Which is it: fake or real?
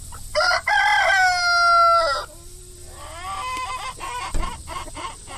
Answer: real